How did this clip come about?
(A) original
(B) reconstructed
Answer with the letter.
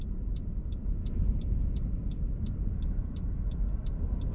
A